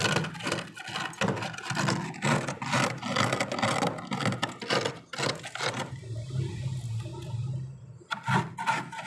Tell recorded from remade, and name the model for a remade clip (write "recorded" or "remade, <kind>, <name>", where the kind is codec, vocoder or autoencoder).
recorded